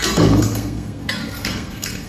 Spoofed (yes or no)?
yes